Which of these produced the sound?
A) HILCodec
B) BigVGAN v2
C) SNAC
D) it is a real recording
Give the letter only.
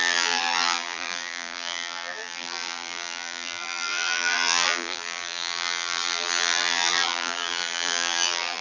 B